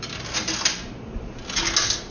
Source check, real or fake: real